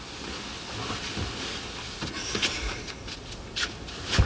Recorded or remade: recorded